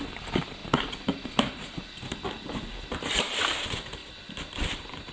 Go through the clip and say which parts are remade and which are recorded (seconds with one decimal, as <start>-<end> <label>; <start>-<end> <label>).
0.0-0.6 remade; 0.6-3.1 recorded; 3.1-4.0 remade; 4.0-4.5 recorded; 4.5-5.1 remade